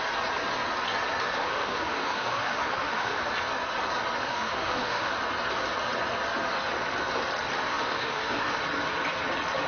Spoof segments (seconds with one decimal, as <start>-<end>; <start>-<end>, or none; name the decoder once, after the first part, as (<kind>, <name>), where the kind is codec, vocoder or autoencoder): 1.3-3.2 (autoencoder, DAC-VAE); 4.2-5.1; 7.7-8.6